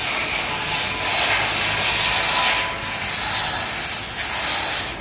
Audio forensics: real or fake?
real